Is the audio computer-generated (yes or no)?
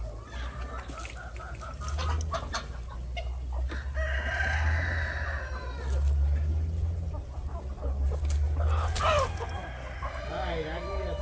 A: no